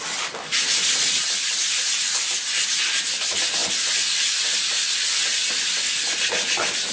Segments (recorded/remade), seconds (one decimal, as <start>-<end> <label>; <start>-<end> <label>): 0.0-6.9 recorded